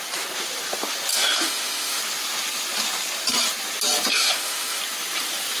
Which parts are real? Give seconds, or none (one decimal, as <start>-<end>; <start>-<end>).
0.0-1.1; 2.0-4.1; 4.8-5.6